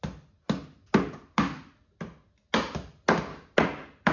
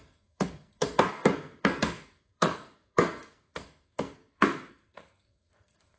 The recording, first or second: first